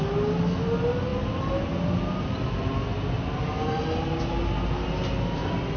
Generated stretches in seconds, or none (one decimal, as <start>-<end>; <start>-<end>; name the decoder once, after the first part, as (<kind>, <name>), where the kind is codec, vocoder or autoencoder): none